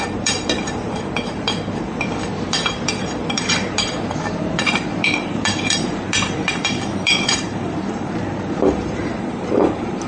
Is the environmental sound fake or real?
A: fake